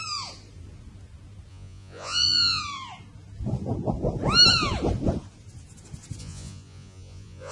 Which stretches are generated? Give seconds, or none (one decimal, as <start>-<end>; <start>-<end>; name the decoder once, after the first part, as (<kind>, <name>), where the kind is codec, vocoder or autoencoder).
1.5-2.6 (vocoder, Vocos); 6.2-7.5